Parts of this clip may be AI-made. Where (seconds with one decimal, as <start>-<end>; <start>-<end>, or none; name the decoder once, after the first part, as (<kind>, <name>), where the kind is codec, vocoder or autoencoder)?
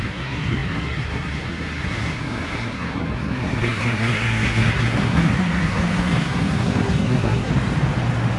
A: 0.0-7.5 (codec, SNAC)